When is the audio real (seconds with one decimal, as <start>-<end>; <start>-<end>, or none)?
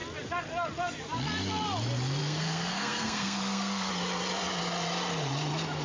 0.0-2.2; 3.9-5.8